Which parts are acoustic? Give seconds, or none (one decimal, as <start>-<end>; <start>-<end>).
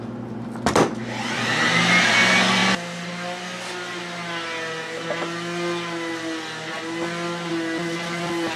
0.0-8.6